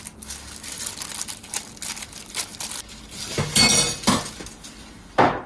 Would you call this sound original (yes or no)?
yes